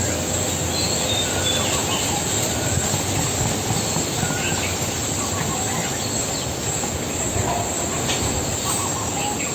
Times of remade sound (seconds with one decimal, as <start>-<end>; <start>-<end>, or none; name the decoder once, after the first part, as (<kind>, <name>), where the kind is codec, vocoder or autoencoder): none